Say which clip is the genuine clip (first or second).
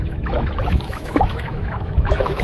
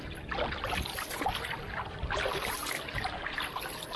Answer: second